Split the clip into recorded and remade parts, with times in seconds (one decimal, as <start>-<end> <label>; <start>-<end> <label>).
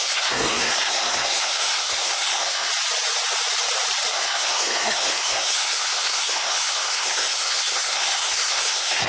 0.0-2.7 remade; 2.7-4.1 recorded; 4.1-9.1 remade